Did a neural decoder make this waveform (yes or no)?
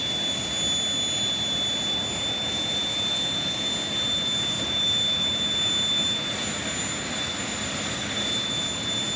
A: no